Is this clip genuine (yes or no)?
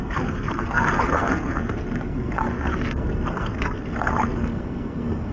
no